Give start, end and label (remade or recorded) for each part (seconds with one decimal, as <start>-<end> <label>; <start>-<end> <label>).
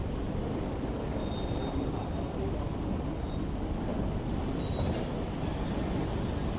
0.0-6.6 recorded